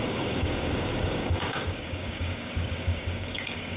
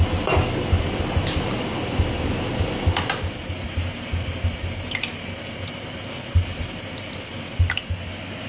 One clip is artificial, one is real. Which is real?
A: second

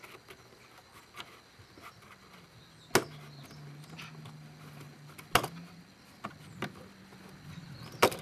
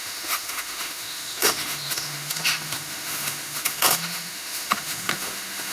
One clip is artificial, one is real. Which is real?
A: first